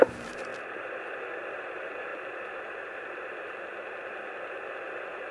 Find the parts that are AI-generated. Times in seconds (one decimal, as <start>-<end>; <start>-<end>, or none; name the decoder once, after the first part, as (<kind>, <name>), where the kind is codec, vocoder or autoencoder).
0.0-0.5 (vocoder, BigVGAN v2); 1.6-2.1